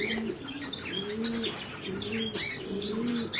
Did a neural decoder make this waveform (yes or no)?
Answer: no